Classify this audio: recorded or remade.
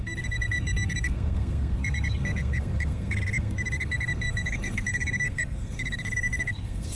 remade